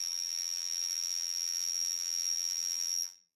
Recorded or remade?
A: remade